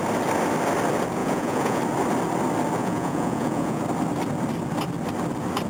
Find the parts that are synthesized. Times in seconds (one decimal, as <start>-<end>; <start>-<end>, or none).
1.2-1.8; 2.8-3.8